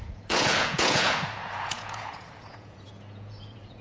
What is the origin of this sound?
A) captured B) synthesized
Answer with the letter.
B